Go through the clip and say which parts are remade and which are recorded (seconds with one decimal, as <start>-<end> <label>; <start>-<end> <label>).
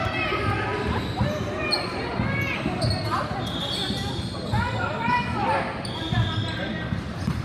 0.0-4.5 recorded; 4.5-6.4 remade; 6.4-7.4 recorded